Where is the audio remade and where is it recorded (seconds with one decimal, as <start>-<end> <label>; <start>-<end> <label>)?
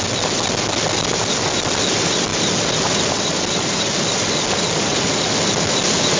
0.0-6.2 recorded